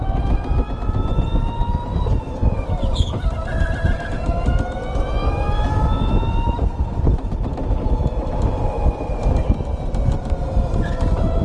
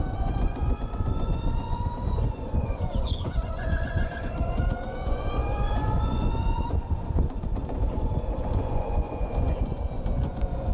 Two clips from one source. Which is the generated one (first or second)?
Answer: second